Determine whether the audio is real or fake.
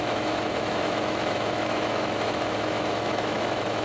fake